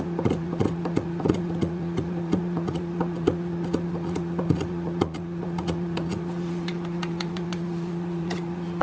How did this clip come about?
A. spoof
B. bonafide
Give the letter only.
A